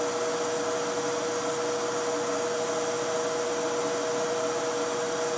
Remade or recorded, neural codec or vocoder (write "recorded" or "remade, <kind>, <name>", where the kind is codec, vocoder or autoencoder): recorded